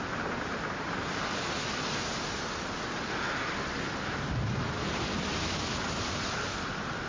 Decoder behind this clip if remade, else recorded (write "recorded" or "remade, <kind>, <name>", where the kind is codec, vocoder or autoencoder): recorded